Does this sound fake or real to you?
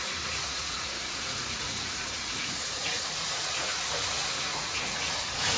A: fake